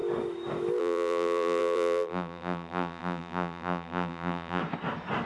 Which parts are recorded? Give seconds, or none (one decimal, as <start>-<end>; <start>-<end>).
0.0-0.8; 4.6-5.3